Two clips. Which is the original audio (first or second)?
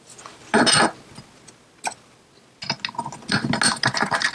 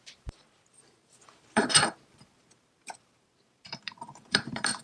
first